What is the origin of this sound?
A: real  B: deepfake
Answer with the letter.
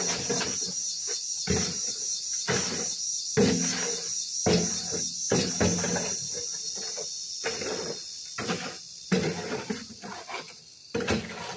A